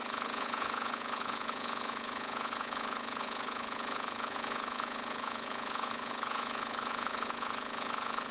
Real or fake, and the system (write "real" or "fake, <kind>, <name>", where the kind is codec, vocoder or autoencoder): fake, vocoder, Vocos